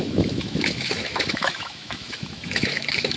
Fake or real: fake